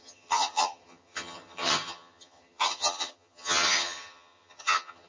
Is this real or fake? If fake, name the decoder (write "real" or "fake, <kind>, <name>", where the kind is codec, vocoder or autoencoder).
fake, vocoder, HiFi-GAN